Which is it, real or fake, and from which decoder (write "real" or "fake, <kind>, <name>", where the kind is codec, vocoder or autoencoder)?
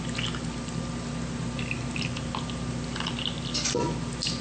real